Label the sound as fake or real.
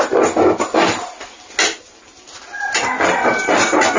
real